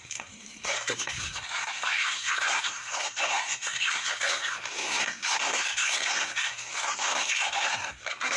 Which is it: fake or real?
fake